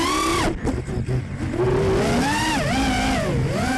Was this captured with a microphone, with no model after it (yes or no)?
yes